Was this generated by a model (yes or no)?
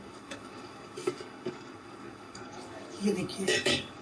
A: yes